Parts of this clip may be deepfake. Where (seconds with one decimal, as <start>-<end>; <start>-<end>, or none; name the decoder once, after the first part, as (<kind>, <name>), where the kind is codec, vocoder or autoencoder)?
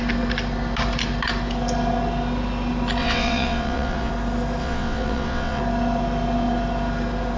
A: 3.0-4.1 (vocoder, WaveNeXt); 4.6-5.6